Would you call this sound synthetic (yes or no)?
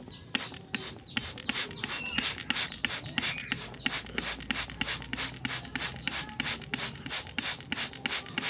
no